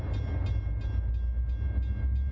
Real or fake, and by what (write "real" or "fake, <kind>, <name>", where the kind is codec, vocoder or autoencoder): real